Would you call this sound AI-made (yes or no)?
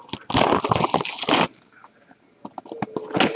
no